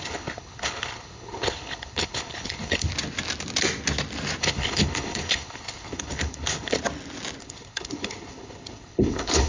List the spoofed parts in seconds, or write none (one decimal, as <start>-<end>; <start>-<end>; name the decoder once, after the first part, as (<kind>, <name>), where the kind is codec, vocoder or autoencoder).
0.0-2.9 (codec, HILCodec); 4.4-6.8; 7.4-9.5